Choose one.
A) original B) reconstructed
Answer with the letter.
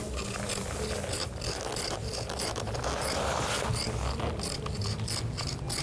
A